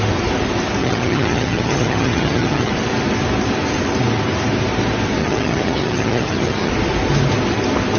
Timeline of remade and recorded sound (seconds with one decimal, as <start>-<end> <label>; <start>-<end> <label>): 0.0-0.8 recorded; 0.8-2.7 remade; 2.7-5.2 recorded; 5.2-6.7 remade; 6.7-8.0 recorded